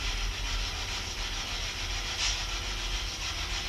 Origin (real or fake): real